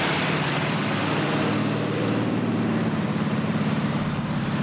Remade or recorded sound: remade